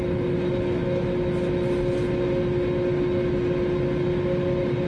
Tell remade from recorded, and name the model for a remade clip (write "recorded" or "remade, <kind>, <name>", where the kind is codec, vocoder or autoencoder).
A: recorded